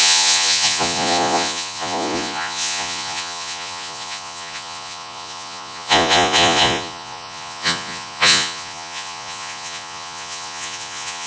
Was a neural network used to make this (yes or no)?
yes